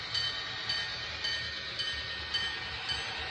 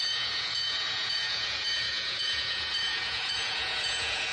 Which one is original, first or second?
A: first